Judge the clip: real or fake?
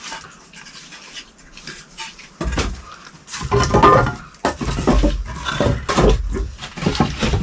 real